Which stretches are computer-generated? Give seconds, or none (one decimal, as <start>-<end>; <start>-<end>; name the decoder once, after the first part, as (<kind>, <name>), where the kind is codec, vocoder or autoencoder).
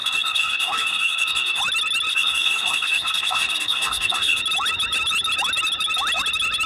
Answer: 0.0-1.6 (codec, DAC); 2.1-4.4